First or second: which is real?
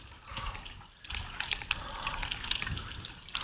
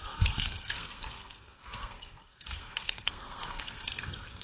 first